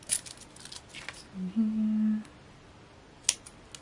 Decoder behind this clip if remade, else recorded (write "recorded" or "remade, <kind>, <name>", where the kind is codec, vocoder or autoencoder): recorded